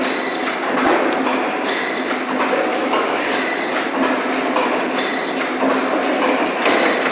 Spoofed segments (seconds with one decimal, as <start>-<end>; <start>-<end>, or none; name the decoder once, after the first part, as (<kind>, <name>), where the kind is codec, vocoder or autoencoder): 2.8-3.9 (codec, DAC)